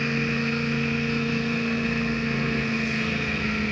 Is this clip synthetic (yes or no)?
yes